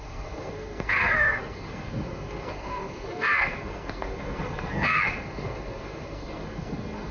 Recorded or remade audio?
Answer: remade